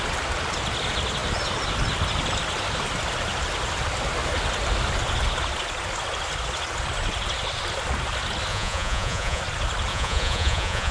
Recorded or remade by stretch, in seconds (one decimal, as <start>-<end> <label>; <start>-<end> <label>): 0.0-8.5 recorded; 8.5-9.4 remade; 9.4-9.9 recorded; 9.9-10.9 remade